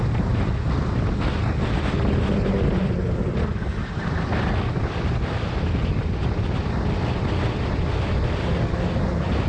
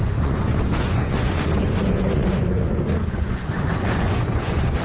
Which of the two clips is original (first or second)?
first